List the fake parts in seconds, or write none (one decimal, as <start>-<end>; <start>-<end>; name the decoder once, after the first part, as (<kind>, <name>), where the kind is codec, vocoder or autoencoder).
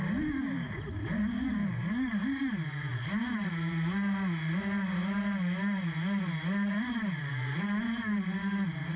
1.8-2.4 (codec, DAC)